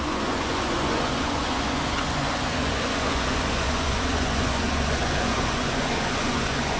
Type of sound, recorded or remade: remade